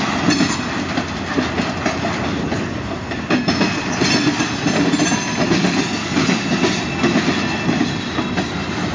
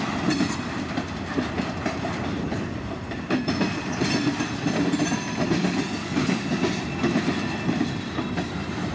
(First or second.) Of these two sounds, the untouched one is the first